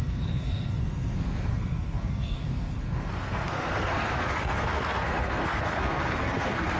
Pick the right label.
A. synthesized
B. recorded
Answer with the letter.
A